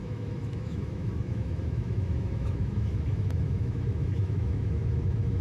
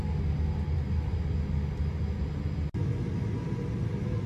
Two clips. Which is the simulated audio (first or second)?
first